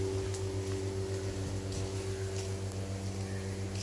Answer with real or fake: real